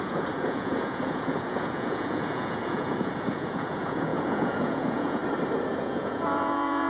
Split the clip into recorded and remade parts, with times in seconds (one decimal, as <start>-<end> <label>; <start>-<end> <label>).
0.0-5.2 remade; 5.2-5.8 recorded; 5.8-6.9 remade

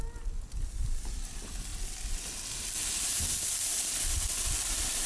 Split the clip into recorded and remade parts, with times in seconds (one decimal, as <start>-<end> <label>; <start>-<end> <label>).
0.0-5.1 recorded

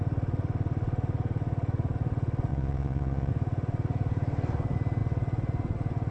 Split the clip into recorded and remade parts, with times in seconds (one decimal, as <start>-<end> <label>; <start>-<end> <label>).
0.0-2.5 recorded; 2.5-3.3 remade; 3.3-6.1 recorded

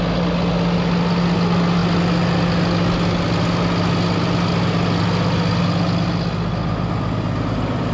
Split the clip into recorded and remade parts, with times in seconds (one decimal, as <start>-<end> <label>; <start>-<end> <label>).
0.0-7.9 recorded

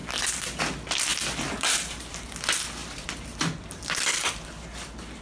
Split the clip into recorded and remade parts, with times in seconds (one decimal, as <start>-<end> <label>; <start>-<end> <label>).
0.0-1.1 recorded; 1.1-2.3 remade; 2.3-2.8 recorded; 2.8-4.3 remade; 4.3-5.2 recorded

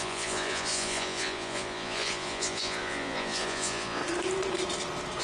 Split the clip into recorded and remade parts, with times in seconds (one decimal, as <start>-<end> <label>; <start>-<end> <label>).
0.0-4.0 remade; 4.0-5.2 recorded

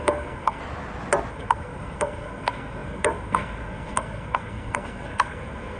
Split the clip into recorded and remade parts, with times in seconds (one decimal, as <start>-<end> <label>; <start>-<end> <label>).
0.0-0.6 remade; 0.6-1.3 recorded; 1.3-5.8 remade

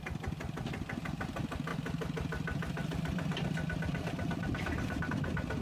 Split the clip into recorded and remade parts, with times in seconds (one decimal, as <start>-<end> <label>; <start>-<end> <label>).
0.0-1.7 recorded; 1.7-5.1 remade; 5.1-5.6 recorded